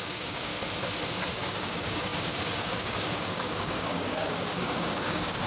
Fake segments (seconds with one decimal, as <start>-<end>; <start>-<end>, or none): 0.0-0.5; 1.3-5.5